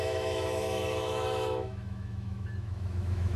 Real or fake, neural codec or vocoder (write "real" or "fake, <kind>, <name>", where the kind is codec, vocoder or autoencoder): fake, autoencoder, DAC-VAE